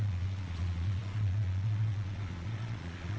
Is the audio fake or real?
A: fake